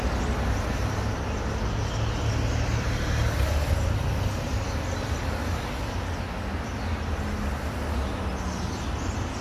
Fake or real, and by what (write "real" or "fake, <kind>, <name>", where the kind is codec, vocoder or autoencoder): real